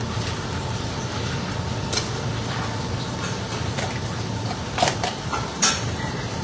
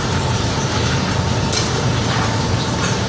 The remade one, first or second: second